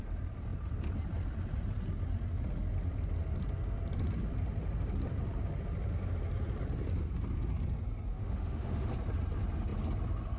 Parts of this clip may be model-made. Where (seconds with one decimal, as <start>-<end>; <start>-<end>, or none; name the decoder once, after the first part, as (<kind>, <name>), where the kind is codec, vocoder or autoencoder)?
8.1-8.9 (autoencoder, DAC-VAE)